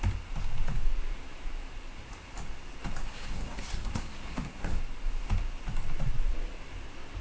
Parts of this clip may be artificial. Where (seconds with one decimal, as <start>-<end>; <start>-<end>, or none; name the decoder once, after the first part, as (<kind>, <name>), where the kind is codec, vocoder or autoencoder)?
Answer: 3.0-4.8 (codec, SNAC)